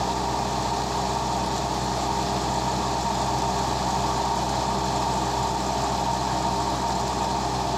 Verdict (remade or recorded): recorded